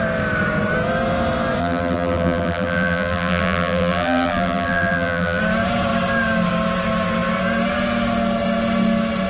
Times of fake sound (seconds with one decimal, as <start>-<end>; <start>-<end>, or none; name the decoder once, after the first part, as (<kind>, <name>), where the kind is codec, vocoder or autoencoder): 1.6-5.4 (vocoder, BigVGAN v2)